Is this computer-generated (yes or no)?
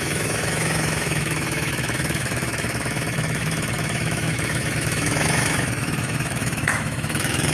yes